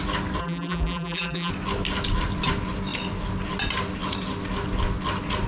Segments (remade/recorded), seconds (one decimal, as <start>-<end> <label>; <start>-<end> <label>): 0.0-0.4 recorded; 0.4-1.5 remade; 1.5-5.5 recorded